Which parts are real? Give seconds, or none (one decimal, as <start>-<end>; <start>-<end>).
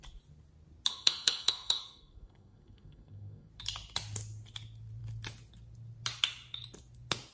0.0-0.9; 3.5-7.3